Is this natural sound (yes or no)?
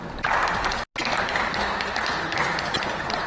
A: yes